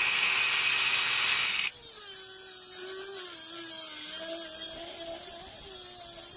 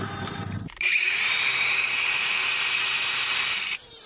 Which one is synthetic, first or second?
second